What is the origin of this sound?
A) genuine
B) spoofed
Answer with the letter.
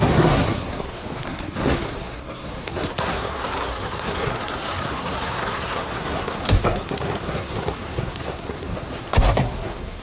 B